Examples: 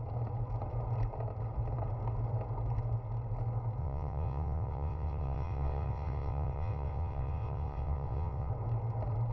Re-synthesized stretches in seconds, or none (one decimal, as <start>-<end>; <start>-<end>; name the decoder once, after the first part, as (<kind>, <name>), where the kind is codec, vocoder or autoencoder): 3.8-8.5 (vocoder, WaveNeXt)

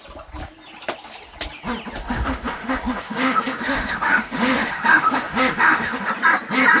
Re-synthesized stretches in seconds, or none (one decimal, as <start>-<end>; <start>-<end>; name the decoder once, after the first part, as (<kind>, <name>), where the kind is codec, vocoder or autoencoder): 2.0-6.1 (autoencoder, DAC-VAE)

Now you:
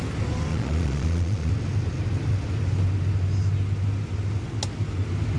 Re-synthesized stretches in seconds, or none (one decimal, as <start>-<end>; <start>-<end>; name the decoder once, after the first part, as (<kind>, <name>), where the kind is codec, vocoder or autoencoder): 0.5-1.5 (vocoder, Vocos)